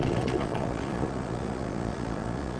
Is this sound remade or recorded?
remade